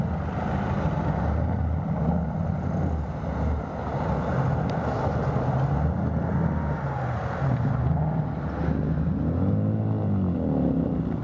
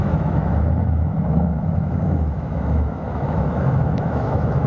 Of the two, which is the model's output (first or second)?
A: second